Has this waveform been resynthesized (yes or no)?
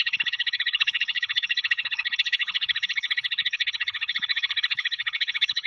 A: yes